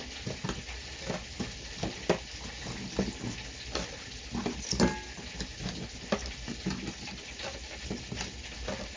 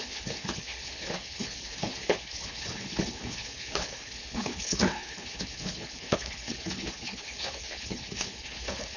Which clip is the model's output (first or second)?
second